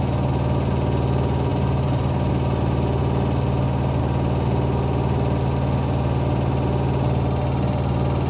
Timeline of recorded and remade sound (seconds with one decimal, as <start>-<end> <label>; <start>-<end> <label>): 0.0-1.5 recorded; 1.5-2.3 remade; 2.3-8.3 recorded